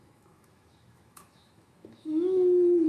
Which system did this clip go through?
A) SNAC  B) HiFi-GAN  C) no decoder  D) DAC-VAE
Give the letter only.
D